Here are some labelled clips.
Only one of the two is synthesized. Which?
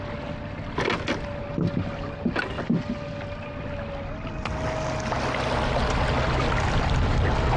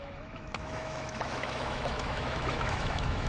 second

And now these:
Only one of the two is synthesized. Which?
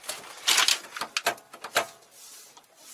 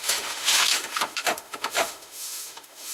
second